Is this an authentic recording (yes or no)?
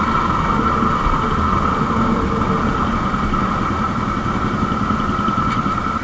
yes